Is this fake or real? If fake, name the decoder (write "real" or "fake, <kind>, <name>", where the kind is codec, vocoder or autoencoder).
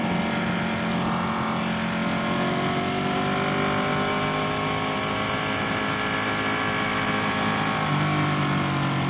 real